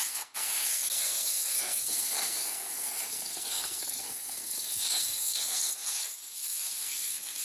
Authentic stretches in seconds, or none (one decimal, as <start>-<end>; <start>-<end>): none